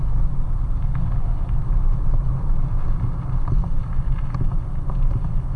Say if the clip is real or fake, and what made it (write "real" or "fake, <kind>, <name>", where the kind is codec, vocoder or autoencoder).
real